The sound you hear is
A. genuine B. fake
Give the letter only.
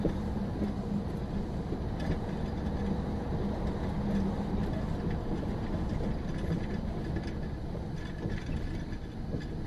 A